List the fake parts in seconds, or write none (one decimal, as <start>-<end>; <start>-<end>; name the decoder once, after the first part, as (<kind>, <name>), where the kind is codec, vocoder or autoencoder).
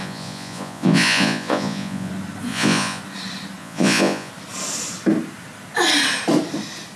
0.0-2.1 (vocoder, Vocos); 2.5-3.0; 3.6-4.3